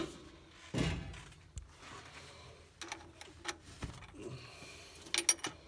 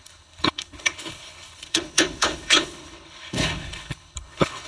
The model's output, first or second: second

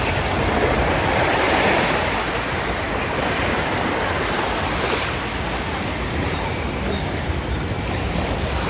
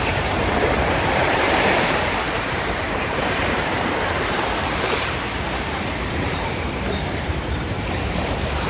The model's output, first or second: second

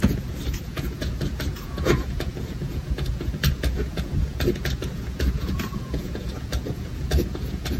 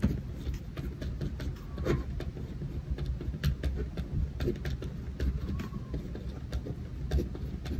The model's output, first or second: first